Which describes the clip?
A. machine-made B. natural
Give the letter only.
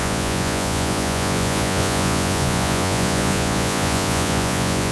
A